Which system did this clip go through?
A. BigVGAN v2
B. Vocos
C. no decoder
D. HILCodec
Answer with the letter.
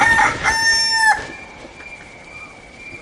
C